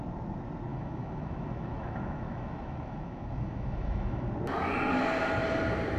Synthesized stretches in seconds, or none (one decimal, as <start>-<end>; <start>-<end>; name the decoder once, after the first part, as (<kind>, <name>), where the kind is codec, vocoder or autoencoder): 0.7-4.3 (autoencoder, DAC-VAE)